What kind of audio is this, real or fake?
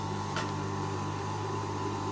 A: fake